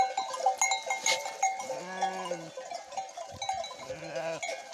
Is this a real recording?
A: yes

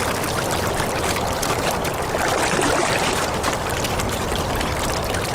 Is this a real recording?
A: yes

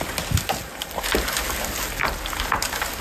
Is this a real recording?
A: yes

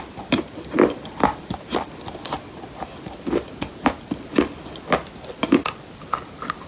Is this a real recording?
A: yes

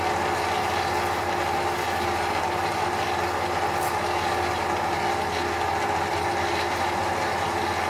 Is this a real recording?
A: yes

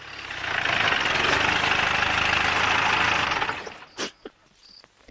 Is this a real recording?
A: yes